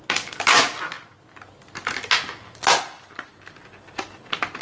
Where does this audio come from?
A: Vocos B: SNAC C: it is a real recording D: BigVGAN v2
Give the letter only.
C